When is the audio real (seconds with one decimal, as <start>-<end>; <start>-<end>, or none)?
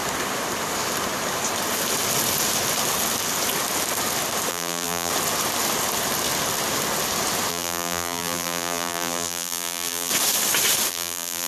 0.0-4.5; 5.1-7.5; 10.1-10.9